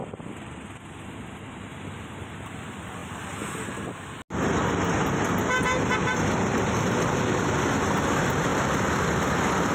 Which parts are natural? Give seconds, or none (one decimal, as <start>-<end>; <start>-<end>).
0.0-9.7